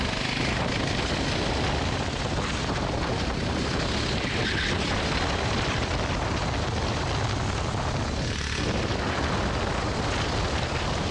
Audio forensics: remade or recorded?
recorded